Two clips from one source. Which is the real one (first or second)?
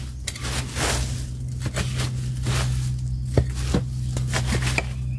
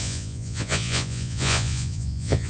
first